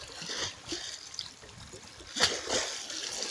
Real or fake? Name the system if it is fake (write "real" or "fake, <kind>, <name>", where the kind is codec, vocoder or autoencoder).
real